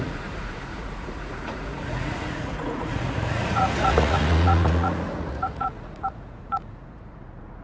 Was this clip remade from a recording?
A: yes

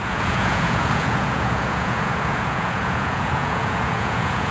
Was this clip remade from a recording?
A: yes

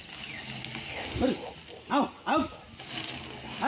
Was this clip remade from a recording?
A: no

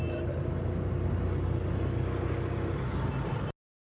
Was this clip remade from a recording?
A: no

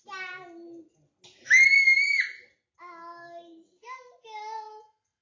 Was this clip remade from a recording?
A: no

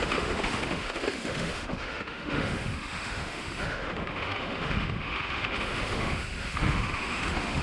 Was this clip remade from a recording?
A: yes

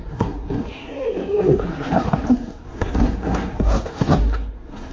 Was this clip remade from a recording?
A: yes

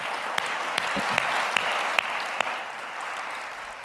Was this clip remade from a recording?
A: no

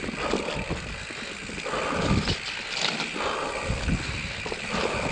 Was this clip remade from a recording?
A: no